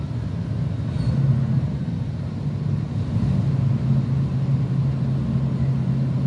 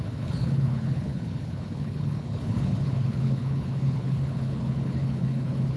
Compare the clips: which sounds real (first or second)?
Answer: first